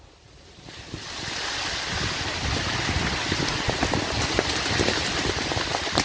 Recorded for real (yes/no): yes